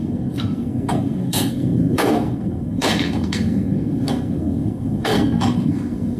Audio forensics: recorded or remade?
remade